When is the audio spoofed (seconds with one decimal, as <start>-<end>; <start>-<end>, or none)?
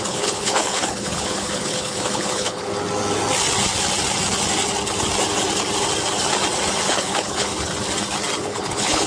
0.0-2.7; 6.9-7.5; 8.4-9.1